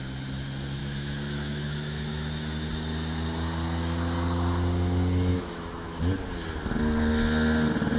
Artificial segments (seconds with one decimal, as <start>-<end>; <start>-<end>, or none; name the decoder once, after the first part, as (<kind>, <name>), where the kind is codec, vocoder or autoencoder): 0.8-2.7 (autoencoder, DAC-VAE); 5.3-6.0